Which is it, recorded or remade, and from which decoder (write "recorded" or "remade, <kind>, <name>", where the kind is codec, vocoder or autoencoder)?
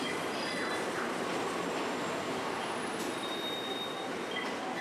recorded